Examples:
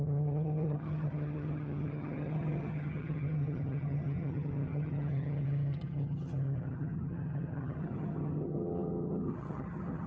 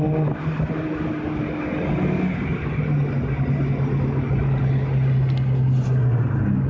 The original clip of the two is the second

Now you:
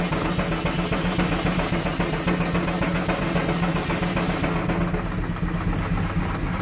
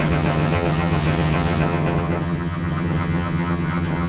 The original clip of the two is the first